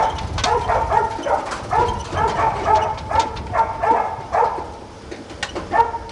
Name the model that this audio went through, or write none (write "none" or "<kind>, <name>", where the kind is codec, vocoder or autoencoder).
none